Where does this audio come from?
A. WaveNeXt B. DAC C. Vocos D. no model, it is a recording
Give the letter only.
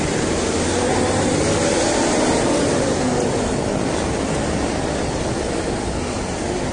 D